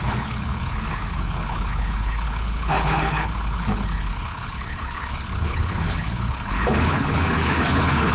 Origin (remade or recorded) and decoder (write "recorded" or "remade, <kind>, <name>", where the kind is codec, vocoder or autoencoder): remade, codec, HILCodec